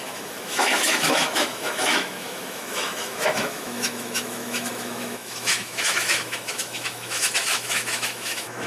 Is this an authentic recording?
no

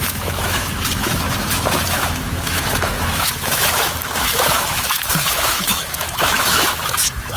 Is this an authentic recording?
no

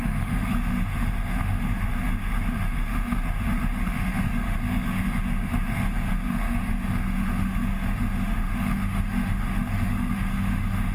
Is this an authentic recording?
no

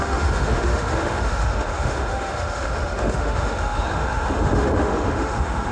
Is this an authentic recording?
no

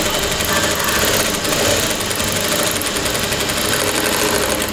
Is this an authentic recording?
yes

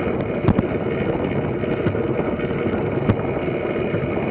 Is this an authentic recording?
yes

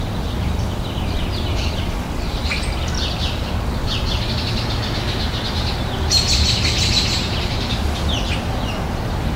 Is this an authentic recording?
yes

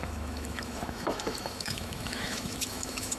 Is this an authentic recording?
no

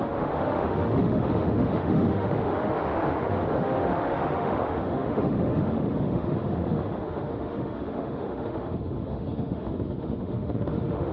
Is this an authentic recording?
no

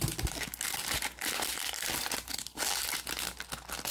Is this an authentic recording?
yes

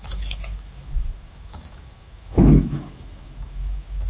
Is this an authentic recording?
no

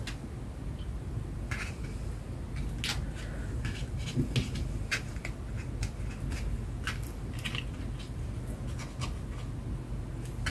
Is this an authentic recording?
yes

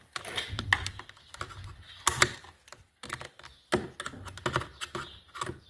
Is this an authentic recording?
yes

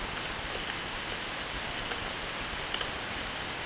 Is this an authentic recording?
yes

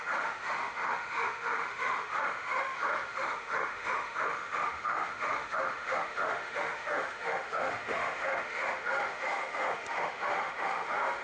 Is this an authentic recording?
no